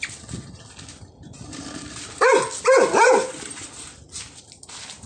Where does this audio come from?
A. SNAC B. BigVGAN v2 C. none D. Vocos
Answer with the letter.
C